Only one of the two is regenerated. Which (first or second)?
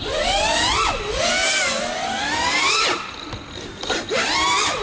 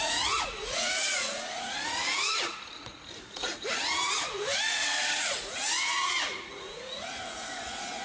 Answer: second